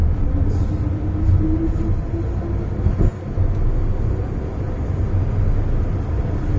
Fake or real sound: real